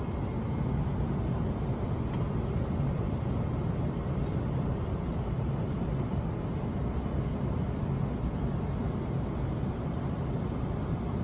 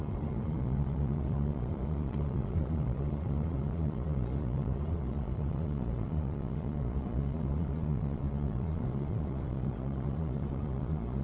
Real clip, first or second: first